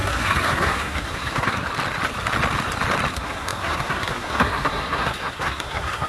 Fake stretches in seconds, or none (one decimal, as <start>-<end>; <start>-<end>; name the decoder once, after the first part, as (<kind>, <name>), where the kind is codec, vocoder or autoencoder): 0.0-1.7 (codec, SNAC); 3.1-6.1